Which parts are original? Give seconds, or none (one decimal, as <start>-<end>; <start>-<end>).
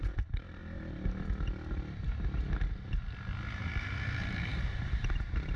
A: 0.6-3.8